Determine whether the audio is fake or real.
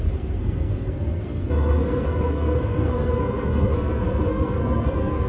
fake